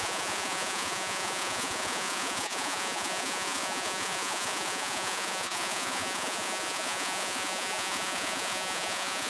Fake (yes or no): yes